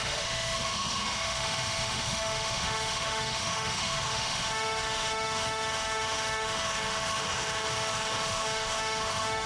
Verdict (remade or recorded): remade